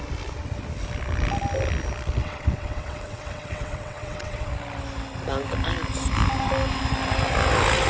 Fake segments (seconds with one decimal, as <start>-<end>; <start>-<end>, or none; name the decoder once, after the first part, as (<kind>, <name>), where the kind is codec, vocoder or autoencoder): 2.2-4.5 (vocoder, WaveNeXt)